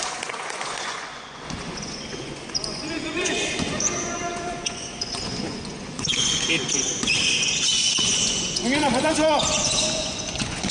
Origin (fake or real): fake